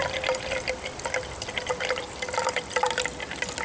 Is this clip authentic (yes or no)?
yes